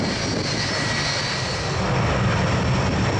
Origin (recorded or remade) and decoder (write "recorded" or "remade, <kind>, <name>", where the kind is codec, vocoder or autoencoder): recorded